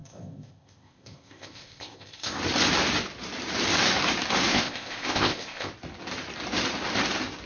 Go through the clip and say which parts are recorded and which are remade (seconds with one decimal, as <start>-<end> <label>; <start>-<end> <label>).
0.0-2.4 remade; 2.4-4.5 recorded; 4.5-5.7 remade; 5.7-7.5 recorded